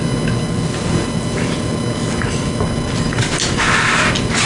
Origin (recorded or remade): recorded